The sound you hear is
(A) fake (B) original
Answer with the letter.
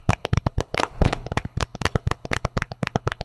A